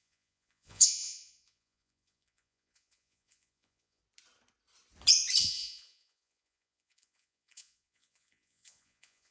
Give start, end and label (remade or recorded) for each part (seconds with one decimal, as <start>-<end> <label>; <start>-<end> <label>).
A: 0.0-4.0 remade; 4.0-5.4 recorded; 5.4-9.3 remade